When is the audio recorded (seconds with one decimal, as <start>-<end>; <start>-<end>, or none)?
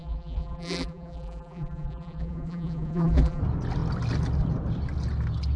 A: 3.4-5.6